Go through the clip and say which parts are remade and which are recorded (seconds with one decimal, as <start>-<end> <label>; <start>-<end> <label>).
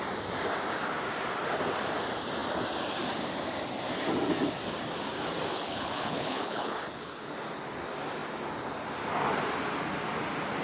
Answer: 0.0-5.5 recorded; 5.5-7.3 remade; 7.3-10.6 recorded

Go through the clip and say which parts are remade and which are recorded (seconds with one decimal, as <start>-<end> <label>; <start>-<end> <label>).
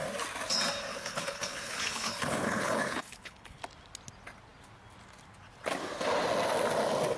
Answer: 0.0-0.9 recorded; 0.9-3.6 remade; 3.6-7.2 recorded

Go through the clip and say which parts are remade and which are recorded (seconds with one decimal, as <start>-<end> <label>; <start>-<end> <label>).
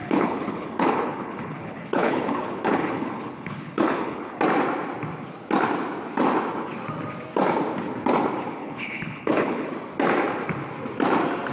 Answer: 0.0-4.4 remade; 4.4-8.6 recorded; 8.6-9.7 remade; 9.7-11.5 recorded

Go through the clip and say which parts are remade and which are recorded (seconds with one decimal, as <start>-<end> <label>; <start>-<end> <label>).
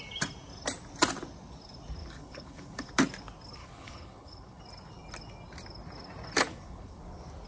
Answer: 0.0-2.0 recorded; 2.0-2.9 remade; 2.9-3.6 recorded; 3.6-4.6 remade; 4.6-6.5 recorded; 6.5-7.0 remade; 7.0-7.5 recorded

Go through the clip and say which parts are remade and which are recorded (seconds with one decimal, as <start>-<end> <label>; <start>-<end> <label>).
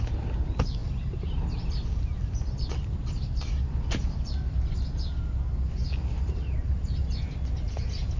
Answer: 0.0-8.2 recorded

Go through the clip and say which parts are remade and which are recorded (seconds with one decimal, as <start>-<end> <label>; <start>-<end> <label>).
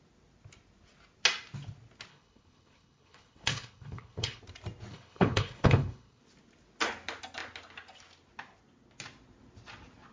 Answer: 0.0-2.1 recorded; 2.1-4.4 remade; 4.4-4.9 recorded; 4.9-6.2 remade; 6.2-10.1 recorded